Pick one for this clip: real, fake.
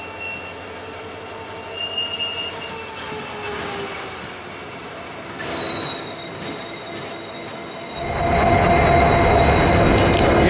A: real